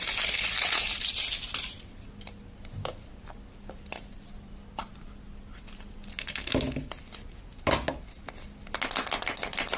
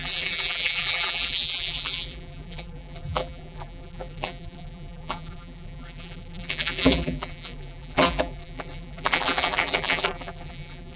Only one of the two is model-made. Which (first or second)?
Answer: second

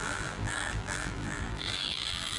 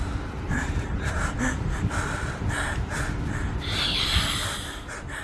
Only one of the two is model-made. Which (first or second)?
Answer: first